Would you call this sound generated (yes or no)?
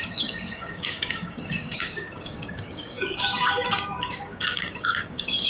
yes